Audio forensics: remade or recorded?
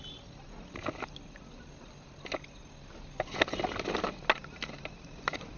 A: recorded